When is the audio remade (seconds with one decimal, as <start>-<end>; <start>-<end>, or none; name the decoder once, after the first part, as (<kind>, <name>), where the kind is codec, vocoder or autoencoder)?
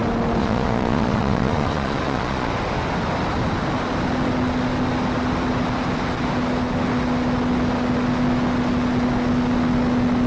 0.4-2.5 (vocoder, Vocos)